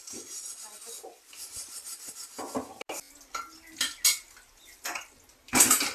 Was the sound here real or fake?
real